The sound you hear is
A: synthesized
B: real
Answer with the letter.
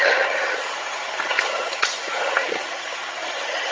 A